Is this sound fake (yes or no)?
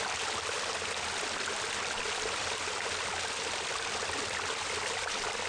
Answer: no